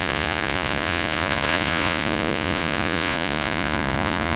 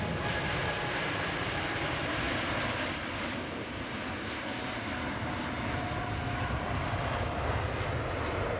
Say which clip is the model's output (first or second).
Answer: first